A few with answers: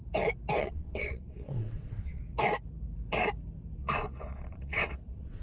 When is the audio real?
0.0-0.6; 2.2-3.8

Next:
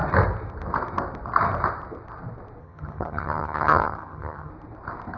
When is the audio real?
0.0-2.6; 4.5-5.2

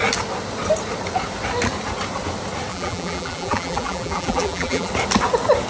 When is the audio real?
0.0-2.7; 4.9-5.7

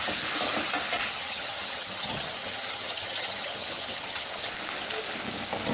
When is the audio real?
0.0-1.1; 4.5-5.7

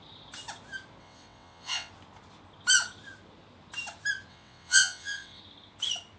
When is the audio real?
0.0-1.0; 1.9-4.3; 5.4-6.2

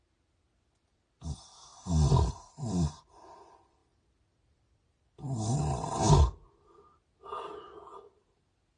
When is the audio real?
0.0-1.7; 3.4-3.8; 5.6-8.8

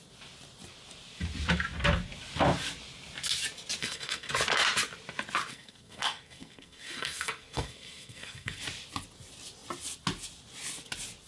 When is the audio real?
0.0-3.8; 4.3-5.5; 8.6-11.3